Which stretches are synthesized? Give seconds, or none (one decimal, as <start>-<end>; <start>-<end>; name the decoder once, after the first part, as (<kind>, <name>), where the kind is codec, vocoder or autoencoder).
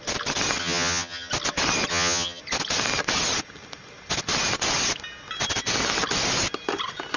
0.6-1.3 (vocoder, HiFi-GAN); 1.9-2.4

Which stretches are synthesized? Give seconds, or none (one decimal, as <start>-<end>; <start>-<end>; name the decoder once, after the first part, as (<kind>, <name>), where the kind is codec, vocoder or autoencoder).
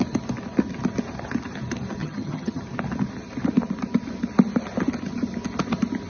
2.0-2.6 (vocoder, HiFi-GAN)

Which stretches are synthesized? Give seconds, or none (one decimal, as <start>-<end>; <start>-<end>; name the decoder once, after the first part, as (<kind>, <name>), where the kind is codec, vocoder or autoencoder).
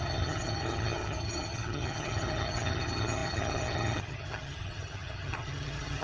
0.0-6.0 (vocoder, HiFi-GAN)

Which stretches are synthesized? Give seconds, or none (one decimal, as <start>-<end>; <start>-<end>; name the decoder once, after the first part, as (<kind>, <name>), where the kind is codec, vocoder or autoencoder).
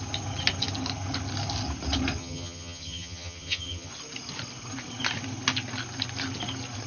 2.2-3.9 (vocoder, HiFi-GAN)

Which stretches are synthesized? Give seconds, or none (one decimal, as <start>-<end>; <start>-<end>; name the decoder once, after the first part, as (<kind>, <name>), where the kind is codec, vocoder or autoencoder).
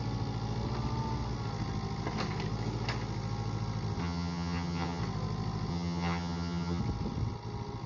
4.0-5.0 (vocoder, HiFi-GAN); 5.7-6.8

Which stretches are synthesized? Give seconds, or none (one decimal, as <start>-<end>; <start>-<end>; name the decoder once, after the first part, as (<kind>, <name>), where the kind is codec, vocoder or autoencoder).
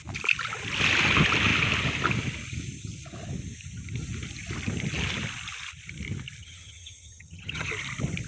6.4-7.7 (vocoder, HiFi-GAN)